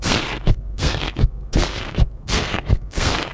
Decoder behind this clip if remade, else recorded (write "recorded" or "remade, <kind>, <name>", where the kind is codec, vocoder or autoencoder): remade, codec, SNAC